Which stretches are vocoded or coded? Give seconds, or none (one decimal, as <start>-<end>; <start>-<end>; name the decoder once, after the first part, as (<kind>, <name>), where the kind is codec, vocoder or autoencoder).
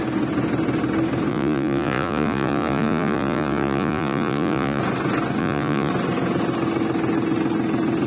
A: 1.3-4.8 (vocoder, Vocos); 5.4-5.9